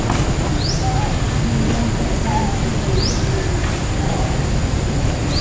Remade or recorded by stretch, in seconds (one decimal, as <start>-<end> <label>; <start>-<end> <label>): 0.0-5.4 recorded